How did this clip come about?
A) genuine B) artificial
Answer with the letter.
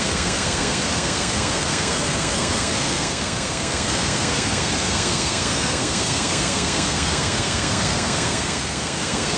B